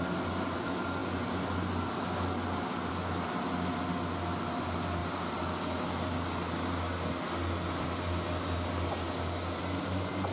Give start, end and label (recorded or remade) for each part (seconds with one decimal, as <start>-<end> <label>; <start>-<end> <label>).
0.0-10.3 recorded